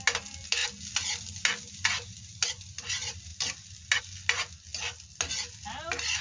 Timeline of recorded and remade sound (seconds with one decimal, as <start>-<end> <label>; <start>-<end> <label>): 0.0-6.2 recorded

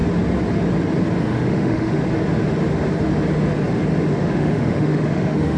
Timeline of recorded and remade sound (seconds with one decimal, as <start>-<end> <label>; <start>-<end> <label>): 0.0-1.2 recorded; 1.2-2.0 remade; 2.0-4.1 recorded; 4.1-5.6 remade

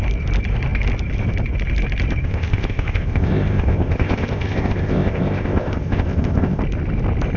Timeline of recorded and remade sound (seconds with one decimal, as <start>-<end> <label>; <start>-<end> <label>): 0.0-2.2 recorded; 2.2-6.6 remade; 6.6-7.4 recorded

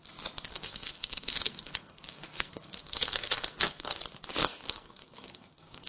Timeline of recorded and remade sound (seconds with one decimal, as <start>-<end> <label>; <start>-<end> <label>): 0.0-0.5 recorded; 0.5-4.0 remade; 4.0-4.4 recorded; 4.4-5.9 remade